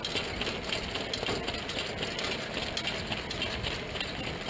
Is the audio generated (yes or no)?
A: no